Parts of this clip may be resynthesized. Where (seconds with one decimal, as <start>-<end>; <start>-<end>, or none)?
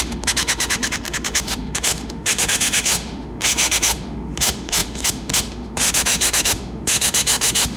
0.0-7.8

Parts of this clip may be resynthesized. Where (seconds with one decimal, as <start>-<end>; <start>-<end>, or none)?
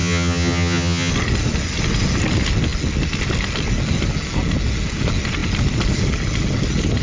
0.0-1.1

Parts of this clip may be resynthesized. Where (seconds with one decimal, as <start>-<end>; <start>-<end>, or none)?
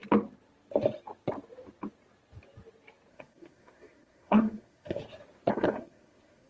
3.1-5.0; 5.5-6.5